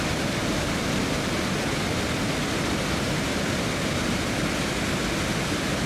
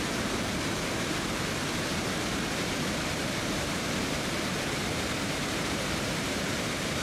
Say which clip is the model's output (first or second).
second